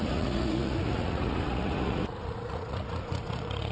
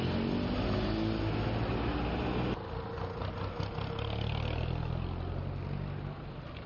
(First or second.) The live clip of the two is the second